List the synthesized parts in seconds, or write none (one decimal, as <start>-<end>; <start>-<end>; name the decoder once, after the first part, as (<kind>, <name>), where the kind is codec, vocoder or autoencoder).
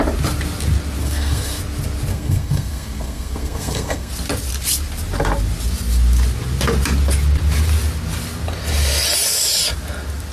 1.0-1.6 (codec, SNAC); 2.1-4.1